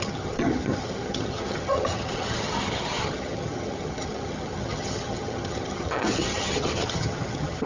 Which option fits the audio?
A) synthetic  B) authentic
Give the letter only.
A